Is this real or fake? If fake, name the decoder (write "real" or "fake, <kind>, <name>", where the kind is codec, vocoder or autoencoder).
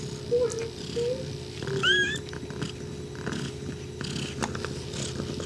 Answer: real